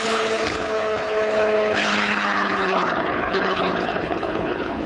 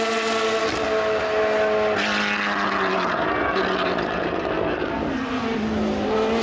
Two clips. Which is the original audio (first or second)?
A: second